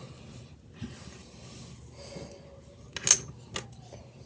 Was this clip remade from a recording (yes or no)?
no